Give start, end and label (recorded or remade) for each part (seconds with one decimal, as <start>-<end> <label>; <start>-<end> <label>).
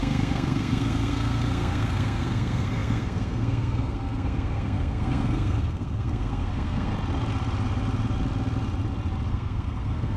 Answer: 0.0-6.9 remade; 6.9-9.3 recorded; 9.3-10.2 remade